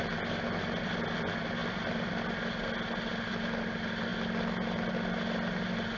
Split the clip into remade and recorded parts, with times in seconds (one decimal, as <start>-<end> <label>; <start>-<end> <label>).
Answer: 0.0-6.0 recorded